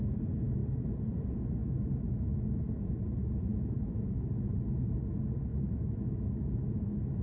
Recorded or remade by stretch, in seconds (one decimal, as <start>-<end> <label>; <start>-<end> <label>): 0.0-3.5 recorded; 3.5-4.2 remade; 4.2-5.5 recorded; 5.5-7.2 remade